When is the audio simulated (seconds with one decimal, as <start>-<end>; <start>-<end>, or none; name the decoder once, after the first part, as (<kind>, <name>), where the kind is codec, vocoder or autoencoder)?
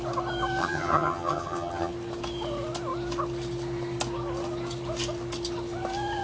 0.6-1.9 (vocoder, HiFi-GAN)